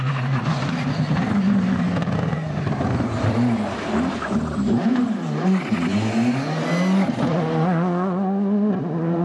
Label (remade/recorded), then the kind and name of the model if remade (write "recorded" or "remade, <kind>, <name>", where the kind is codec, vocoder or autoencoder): recorded